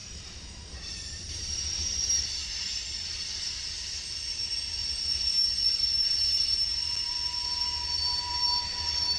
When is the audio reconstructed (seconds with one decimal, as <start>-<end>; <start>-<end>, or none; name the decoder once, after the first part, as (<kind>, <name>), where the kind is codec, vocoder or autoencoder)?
0.0-2.1 (vocoder, BigVGAN v2); 4.8-9.2